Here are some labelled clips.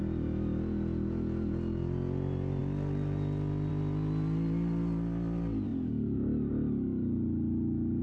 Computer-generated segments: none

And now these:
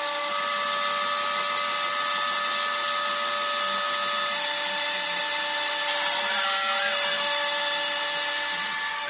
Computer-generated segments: none

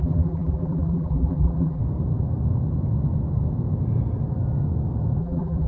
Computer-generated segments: 0.0-1.8 (vocoder, BigVGAN v2); 5.2-5.7

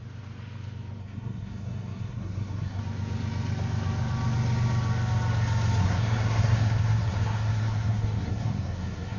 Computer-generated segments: 1.0-2.8 (codec, SNAC); 5.8-9.2

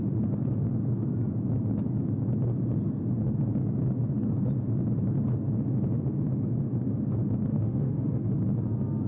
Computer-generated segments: 7.5-8.3 (autoencoder, DAC-VAE)